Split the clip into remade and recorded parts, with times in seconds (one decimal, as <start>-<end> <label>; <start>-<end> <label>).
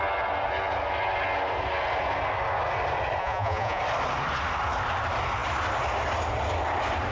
0.0-3.2 recorded; 3.2-3.8 remade; 3.8-7.1 recorded